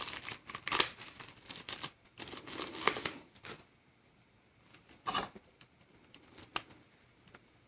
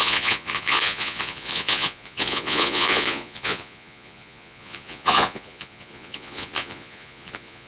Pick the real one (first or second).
first